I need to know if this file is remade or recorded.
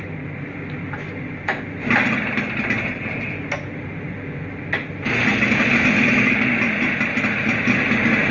recorded